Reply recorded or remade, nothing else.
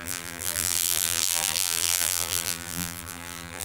remade